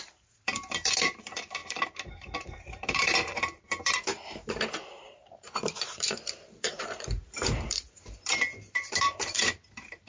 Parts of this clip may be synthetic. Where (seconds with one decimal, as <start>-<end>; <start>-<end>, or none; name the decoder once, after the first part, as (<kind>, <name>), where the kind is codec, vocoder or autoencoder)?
0.0-10.1 (vocoder, BigVGAN v2)